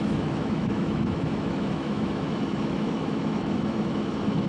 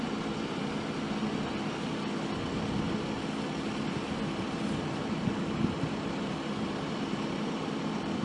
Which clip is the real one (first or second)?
second